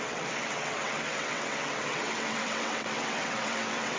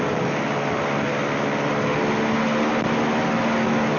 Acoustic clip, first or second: second